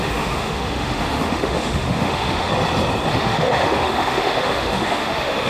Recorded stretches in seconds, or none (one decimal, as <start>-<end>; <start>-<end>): 2.5-3.1